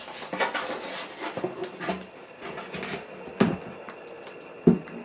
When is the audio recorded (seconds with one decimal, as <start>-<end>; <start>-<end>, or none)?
0.0-5.0